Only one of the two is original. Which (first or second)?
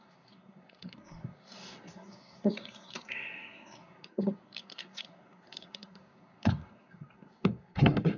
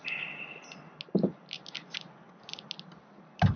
second